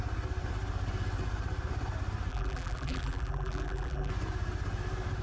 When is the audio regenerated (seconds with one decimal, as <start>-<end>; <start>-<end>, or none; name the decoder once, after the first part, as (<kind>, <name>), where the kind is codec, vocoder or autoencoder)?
2.3-4.1 (vocoder, BigVGAN v2)